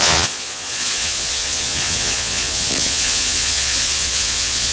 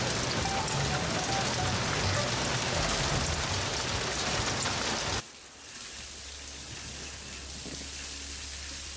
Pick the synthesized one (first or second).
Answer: first